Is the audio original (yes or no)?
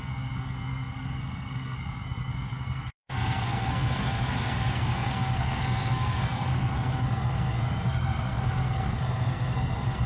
no